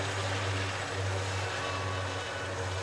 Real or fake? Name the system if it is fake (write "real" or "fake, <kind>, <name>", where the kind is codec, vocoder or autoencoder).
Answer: real